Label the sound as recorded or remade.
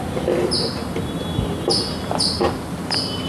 recorded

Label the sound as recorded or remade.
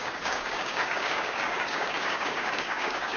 remade